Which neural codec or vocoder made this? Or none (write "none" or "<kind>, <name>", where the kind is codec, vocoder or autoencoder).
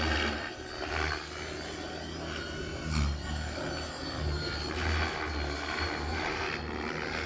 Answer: none